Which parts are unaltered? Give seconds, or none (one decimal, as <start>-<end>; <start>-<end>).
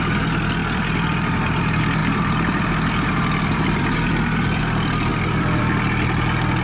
0.0-0.6; 1.6-2.0; 4.6-5.1; 5.6-6.6